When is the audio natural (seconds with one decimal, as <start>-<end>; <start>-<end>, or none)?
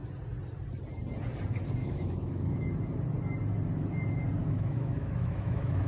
0.0-1.8; 2.7-4.4